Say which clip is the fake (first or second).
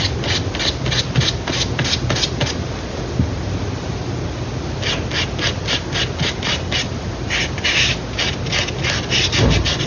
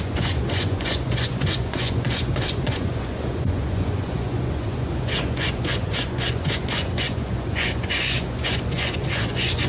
second